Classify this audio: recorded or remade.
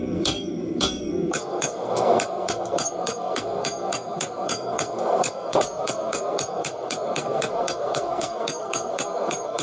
remade